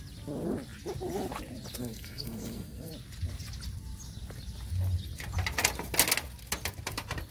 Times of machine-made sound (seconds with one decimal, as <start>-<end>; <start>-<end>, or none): 1.8-2.9